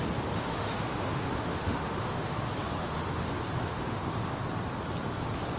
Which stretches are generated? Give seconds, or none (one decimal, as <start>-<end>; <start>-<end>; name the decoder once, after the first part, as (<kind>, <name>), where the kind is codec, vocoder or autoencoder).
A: 0.5-2.4 (autoencoder, DAC-VAE); 2.8-3.3; 3.7-4.4